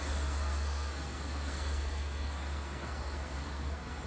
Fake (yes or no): yes